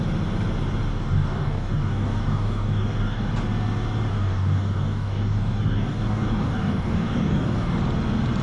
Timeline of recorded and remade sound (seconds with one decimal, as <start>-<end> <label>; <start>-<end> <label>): 0.0-0.9 recorded; 0.9-3.3 remade; 3.3-4.1 recorded; 4.1-7.8 remade; 7.8-8.4 recorded